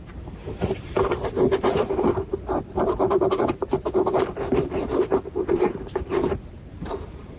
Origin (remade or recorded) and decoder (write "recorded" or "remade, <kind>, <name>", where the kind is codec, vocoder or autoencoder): remade, vocoder, BigVGAN v2